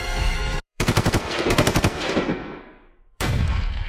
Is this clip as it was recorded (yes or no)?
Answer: no